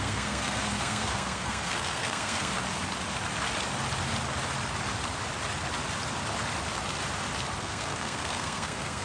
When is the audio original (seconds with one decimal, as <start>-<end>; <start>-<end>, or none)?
2.6-7.6